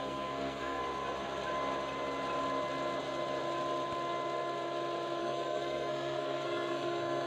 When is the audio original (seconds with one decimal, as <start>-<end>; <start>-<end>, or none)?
0.8-5.2